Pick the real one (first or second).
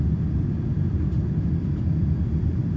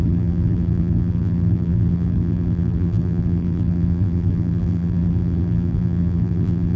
first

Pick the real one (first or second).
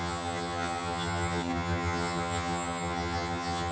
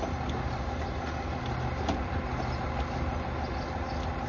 second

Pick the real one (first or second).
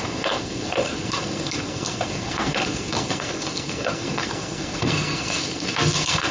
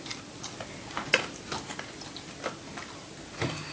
second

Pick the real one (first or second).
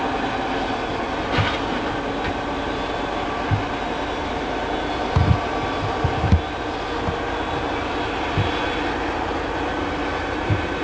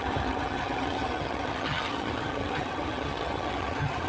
first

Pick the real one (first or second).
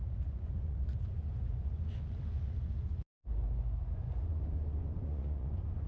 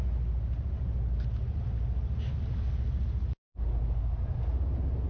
second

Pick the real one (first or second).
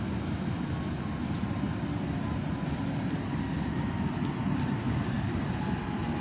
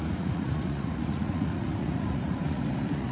first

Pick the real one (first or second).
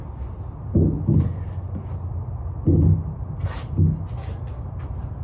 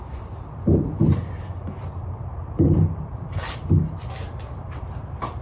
first